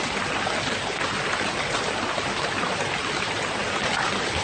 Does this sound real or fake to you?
real